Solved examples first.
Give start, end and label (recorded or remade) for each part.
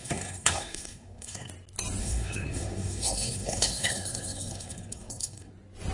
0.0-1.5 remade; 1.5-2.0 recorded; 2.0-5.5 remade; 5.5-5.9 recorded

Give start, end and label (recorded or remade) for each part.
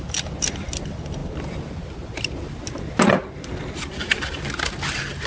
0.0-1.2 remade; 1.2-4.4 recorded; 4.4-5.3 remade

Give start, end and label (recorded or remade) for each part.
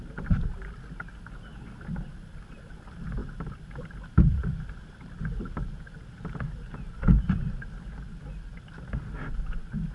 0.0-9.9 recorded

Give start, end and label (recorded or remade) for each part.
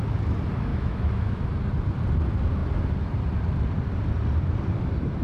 0.0-0.7 recorded; 0.7-1.5 remade; 1.5-5.2 recorded